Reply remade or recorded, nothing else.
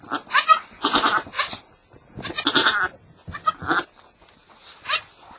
recorded